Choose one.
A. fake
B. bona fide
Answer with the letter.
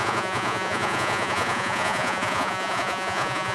A